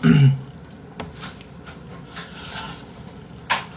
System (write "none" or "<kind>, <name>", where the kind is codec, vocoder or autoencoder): none